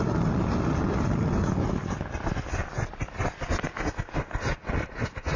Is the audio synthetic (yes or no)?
no